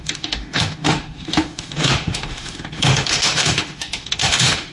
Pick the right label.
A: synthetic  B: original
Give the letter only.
A